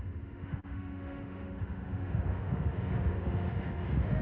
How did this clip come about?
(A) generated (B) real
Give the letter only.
A